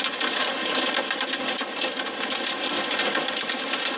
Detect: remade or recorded recorded